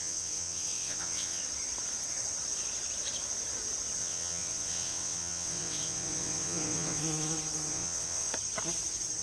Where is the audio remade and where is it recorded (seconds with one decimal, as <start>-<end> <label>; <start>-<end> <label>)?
0.0-1.4 remade; 1.4-4.0 recorded; 4.0-7.0 remade; 7.0-7.7 recorded; 7.7-8.3 remade; 8.3-9.2 recorded